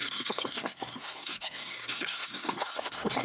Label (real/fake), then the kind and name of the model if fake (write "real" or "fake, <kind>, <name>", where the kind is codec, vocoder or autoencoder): fake, codec, SNAC